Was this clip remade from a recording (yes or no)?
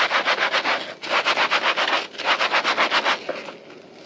no